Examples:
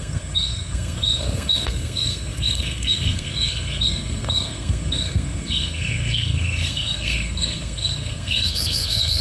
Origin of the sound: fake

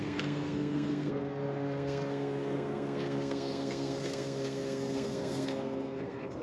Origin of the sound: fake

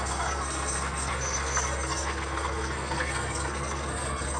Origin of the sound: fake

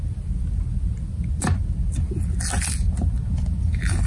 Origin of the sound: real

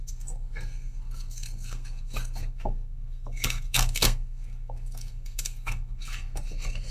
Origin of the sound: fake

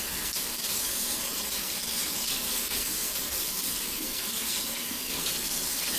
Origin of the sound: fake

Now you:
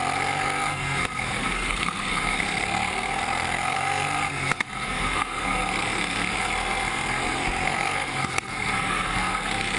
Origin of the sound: fake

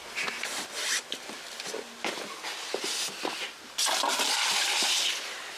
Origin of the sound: real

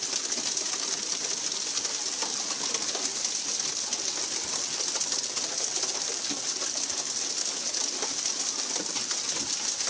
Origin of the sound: real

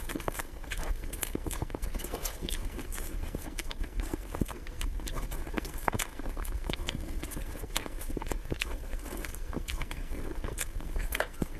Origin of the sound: fake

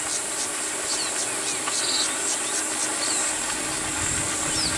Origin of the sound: real